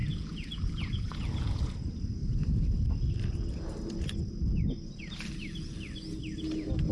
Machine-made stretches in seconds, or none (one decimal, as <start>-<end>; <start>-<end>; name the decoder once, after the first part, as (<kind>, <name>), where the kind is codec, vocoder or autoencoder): 0.0-1.6 (vocoder, Vocos)